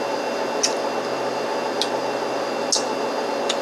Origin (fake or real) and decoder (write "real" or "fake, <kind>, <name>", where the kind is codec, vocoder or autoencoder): real